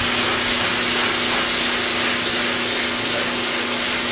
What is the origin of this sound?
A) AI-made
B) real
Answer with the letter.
B